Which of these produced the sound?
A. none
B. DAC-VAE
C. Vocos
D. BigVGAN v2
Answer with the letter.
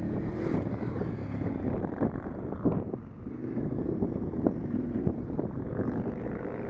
D